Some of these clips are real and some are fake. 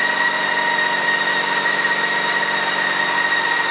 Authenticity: real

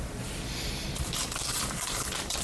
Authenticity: fake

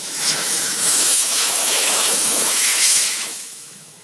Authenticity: fake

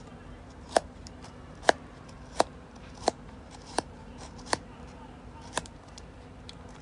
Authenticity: fake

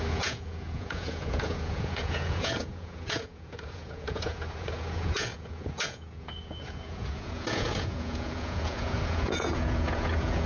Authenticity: fake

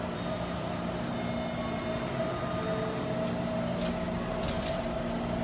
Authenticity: real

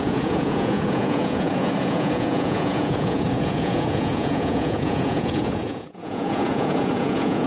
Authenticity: fake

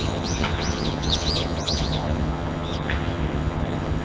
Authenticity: fake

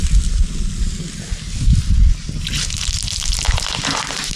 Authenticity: real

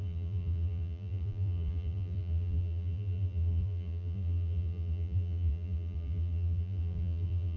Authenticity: fake